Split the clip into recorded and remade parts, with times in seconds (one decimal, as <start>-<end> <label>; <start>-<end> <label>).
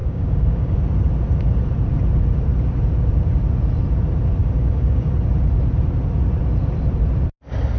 0.0-0.8 remade; 0.8-4.4 recorded; 4.4-5.1 remade; 5.1-7.8 recorded